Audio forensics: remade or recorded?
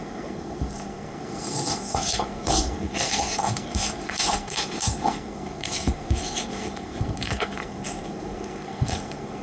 remade